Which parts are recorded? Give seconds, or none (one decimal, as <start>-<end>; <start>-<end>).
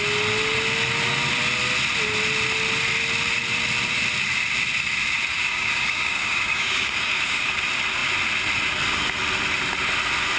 0.0-5.3; 7.5-10.4